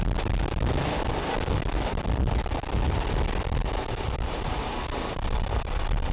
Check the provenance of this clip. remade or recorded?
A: recorded